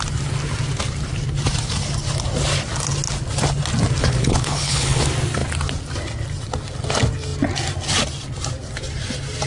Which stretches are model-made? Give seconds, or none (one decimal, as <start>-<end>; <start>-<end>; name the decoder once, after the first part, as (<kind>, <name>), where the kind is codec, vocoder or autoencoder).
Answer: 4.0-5.0 (codec, HILCodec)